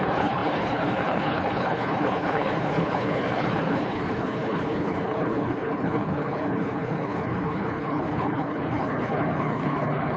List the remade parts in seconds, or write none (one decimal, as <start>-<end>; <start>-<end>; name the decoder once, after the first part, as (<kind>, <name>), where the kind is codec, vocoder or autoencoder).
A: 0.0-10.2 (codec, HILCodec)